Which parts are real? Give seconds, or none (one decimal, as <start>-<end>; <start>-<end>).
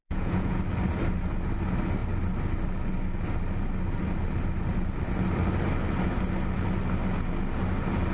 0.6-8.1